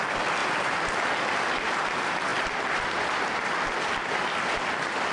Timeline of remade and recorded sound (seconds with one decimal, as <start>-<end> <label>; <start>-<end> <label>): 0.0-2.3 recorded; 2.3-3.9 remade; 3.9-5.1 recorded